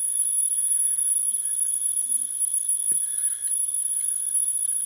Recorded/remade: recorded